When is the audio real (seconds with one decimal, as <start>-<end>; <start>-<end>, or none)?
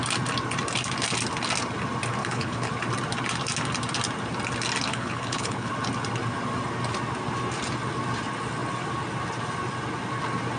0.0-2.2; 2.7-4.9; 5.7-10.6